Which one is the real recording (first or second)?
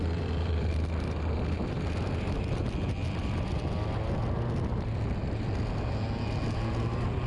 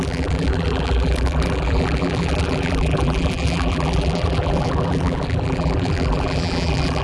first